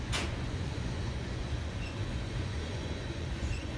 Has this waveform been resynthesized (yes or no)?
yes